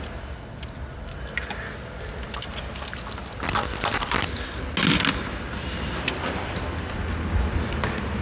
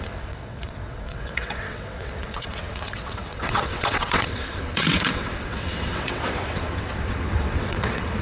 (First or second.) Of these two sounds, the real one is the first